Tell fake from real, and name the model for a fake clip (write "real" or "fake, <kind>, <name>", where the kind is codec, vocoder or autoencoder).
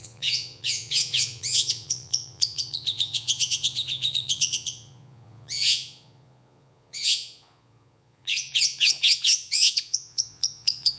fake, vocoder, Vocos